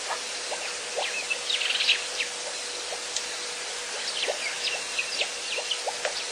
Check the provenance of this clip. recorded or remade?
recorded